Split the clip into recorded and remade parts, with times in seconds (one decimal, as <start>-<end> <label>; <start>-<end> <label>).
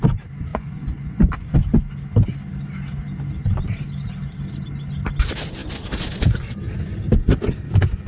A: 0.0-0.5 recorded; 0.5-1.5 remade; 1.5-8.1 recorded